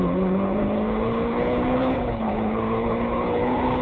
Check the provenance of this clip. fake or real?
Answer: fake